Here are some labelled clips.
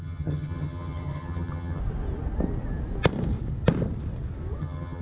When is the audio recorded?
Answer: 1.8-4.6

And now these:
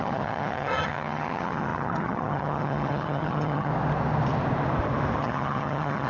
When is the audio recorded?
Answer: 3.7-5.2

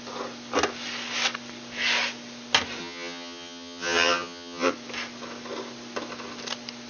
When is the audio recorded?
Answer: 0.0-2.8; 4.7-6.9

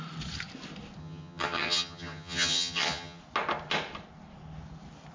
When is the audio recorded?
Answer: 0.0-1.0; 3.2-5.1

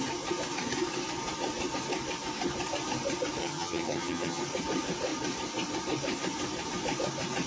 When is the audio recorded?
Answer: 0.0-3.4; 4.4-7.5

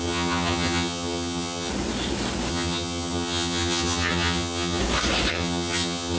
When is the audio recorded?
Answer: 1.7-2.5; 4.8-5.3